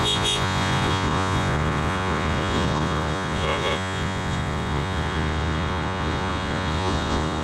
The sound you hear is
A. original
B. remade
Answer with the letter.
B